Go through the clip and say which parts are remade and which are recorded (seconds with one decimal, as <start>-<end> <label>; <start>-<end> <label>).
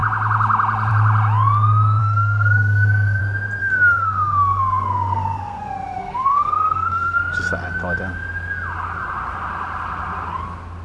0.0-2.0 recorded; 2.0-3.2 remade; 3.2-3.6 recorded; 3.6-7.2 remade; 7.2-10.8 recorded